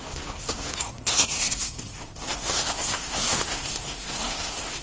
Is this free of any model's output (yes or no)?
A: no